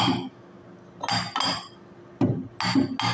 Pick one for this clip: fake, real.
real